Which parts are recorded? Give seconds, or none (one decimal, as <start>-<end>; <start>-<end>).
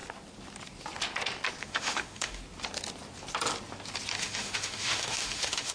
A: 0.0-1.6; 2.4-4.2